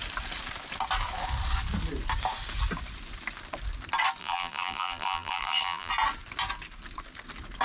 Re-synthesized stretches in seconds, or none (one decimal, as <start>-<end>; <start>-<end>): 4.2-5.9